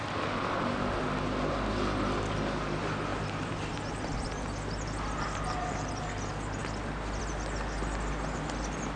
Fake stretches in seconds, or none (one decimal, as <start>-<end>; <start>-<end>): none